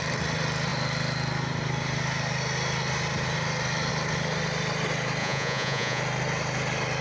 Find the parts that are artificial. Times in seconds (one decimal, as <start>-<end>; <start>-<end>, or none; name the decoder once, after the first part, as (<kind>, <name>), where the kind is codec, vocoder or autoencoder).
5.2-6.0 (vocoder, Vocos)